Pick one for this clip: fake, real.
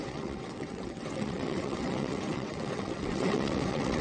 fake